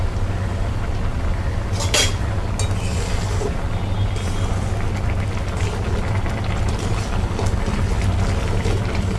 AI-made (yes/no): no